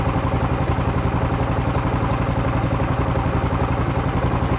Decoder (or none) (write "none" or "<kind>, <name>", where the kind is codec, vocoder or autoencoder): none